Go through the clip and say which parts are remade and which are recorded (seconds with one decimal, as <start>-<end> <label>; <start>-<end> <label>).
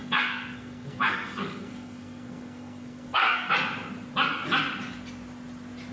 0.0-3.5 remade; 3.5-5.9 recorded